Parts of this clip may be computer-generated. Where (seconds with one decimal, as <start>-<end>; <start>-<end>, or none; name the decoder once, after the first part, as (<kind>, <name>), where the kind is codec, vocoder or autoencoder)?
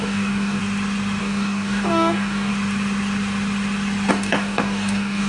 0.0-0.6 (codec, DAC); 1.2-2.5; 4.1-5.3